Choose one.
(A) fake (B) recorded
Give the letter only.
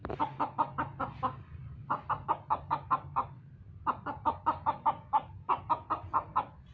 B